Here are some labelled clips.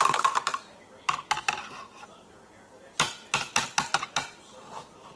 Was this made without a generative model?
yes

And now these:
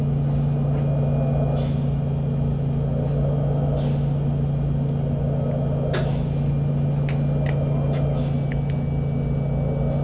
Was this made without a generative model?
yes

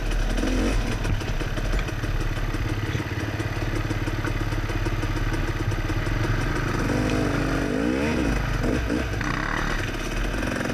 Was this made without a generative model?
yes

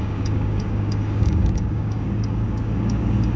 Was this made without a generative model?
no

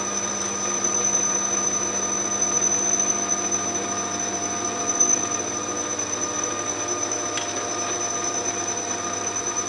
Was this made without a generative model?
yes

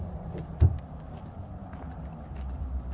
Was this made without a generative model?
yes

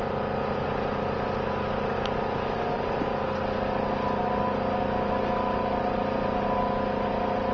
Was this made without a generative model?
yes